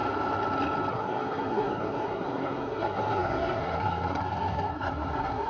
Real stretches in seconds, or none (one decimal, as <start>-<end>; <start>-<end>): 0.0-0.9